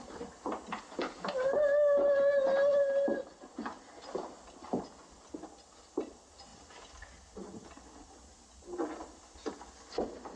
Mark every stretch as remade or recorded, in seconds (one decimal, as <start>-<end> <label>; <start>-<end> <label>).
0.0-10.4 recorded